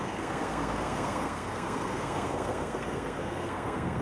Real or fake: fake